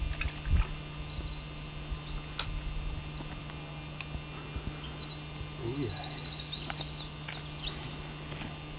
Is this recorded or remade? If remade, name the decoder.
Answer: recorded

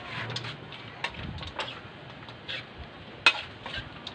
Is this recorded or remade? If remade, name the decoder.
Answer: recorded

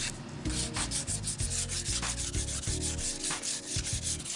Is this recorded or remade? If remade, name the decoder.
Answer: recorded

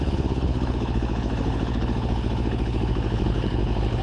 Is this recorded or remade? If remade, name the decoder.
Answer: remade, codec, HILCodec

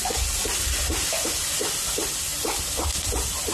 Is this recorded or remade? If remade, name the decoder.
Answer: recorded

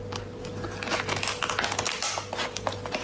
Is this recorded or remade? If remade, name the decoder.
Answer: recorded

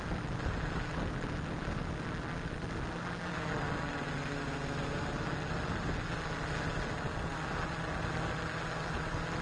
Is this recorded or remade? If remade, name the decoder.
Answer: recorded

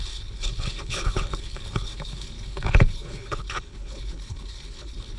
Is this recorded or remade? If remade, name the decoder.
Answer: remade, codec, HILCodec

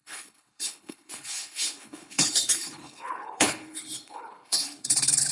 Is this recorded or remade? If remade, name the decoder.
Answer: remade, codec, HILCodec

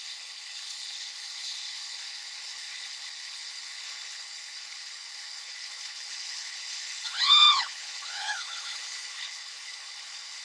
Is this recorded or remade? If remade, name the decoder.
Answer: remade, codec, HILCodec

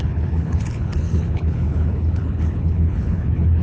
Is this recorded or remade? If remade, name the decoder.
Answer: remade, codec, HILCodec